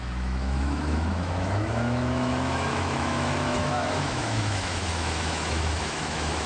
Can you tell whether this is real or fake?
fake